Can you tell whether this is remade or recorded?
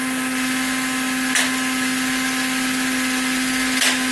recorded